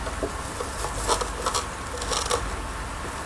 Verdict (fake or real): real